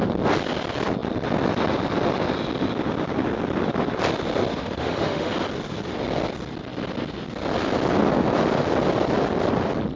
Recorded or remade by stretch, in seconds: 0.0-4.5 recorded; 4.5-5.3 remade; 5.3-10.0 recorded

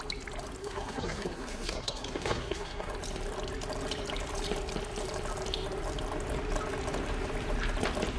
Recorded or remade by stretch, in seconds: 0.0-0.6 recorded; 0.6-2.9 remade; 2.9-8.2 recorded

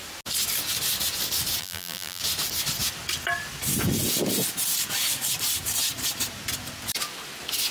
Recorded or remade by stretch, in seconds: 0.0-1.6 recorded; 1.6-2.2 remade; 2.2-7.7 recorded

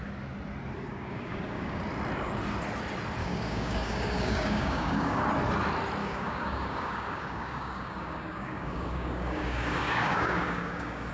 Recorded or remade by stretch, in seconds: 0.0-0.9 recorded; 0.9-1.8 remade; 1.8-3.2 recorded; 3.2-5.2 remade; 5.2-6.0 recorded; 6.0-11.1 remade